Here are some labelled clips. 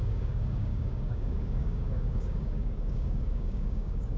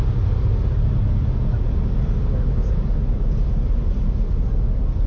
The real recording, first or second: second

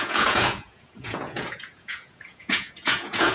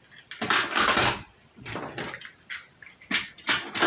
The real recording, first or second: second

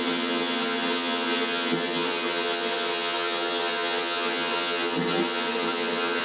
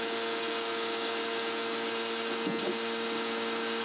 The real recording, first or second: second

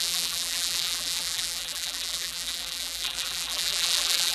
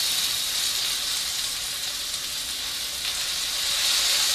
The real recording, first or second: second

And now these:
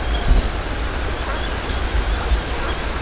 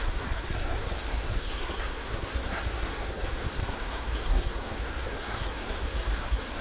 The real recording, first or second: first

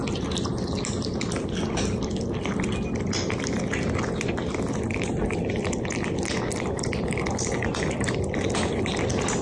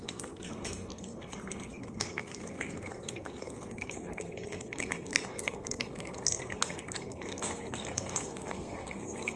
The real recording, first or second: first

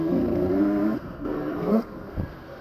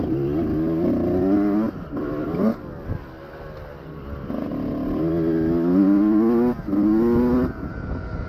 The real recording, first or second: second